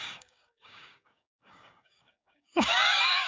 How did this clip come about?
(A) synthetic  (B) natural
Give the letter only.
A